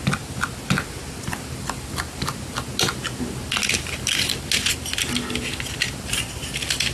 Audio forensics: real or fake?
real